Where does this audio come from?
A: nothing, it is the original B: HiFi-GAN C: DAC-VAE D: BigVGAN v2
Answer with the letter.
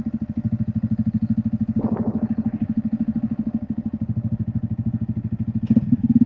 A